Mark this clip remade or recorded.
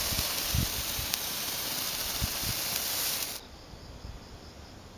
recorded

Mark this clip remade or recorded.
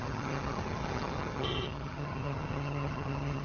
remade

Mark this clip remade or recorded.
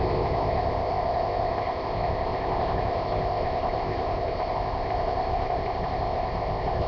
remade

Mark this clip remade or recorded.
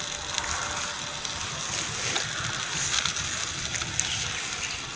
recorded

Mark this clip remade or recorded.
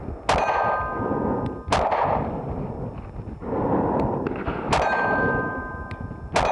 recorded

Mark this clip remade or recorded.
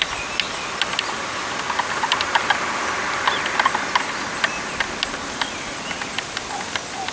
recorded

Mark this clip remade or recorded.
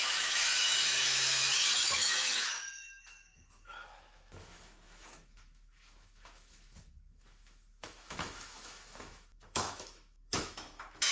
remade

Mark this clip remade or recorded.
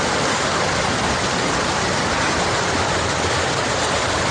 recorded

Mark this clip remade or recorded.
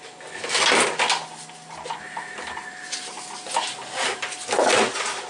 recorded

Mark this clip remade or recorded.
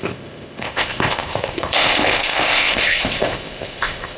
remade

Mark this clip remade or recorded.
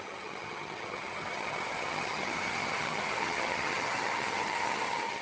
remade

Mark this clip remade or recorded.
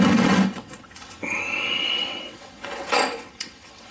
remade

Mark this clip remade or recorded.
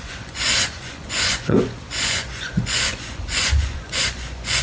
remade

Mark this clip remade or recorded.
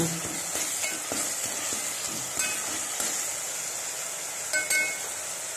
recorded